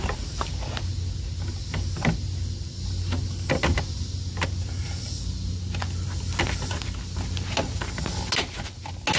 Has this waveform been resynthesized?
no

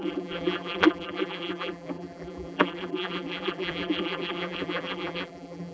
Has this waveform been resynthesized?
yes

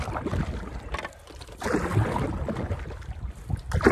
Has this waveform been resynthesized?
no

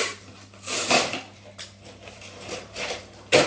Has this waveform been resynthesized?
yes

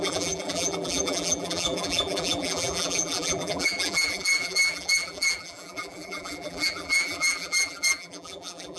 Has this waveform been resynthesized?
yes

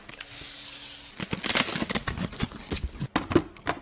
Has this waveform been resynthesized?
no